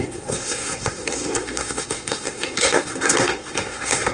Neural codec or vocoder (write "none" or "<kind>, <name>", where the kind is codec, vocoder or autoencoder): codec, SNAC